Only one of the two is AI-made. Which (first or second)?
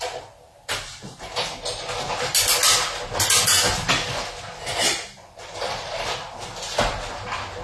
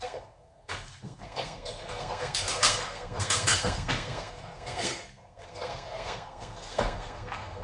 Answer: second